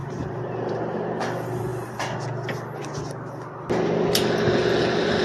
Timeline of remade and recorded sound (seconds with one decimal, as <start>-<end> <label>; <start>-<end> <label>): 0.0-0.8 remade; 0.8-5.2 recorded